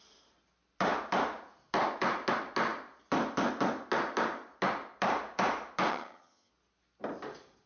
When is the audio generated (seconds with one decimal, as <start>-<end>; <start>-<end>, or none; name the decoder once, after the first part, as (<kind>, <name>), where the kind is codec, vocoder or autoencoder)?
5.9-6.5 (vocoder, HiFi-GAN)